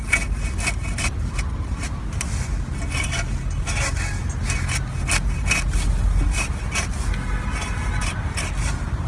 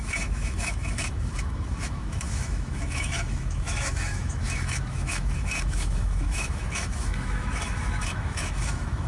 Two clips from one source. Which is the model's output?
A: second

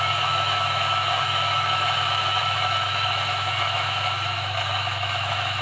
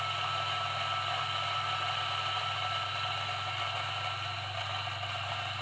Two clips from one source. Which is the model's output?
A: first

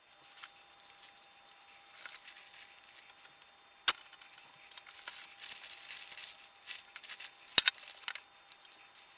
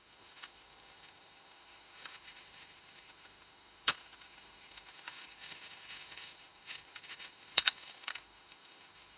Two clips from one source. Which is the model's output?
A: second